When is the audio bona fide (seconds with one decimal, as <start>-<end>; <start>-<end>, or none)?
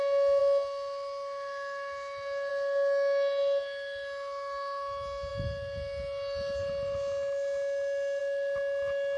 0.0-9.2